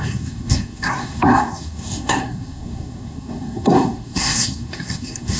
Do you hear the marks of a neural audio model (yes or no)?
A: yes